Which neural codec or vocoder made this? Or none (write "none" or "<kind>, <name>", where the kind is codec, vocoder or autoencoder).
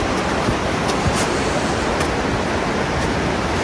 none